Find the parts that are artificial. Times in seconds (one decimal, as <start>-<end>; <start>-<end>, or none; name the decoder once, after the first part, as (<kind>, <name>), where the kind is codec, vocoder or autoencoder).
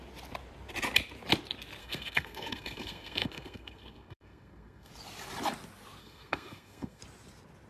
1.8-4.9 (codec, SNAC); 6.0-7.0